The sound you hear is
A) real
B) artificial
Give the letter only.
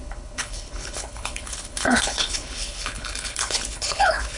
B